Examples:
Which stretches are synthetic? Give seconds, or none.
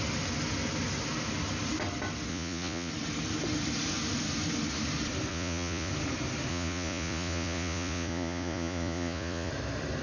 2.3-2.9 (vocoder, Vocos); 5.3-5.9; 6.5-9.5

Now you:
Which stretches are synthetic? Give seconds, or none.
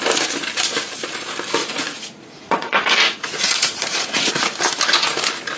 1.6-4.3 (vocoder, Vocos)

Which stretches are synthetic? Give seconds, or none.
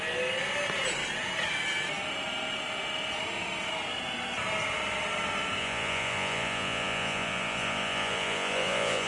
5.6-9.1 (vocoder, Vocos)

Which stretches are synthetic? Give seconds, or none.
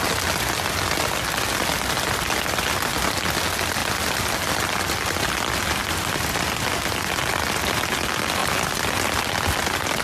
none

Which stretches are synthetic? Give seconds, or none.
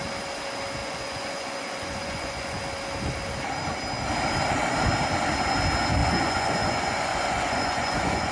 0.8-2.6 (vocoder, Vocos); 6.0-8.3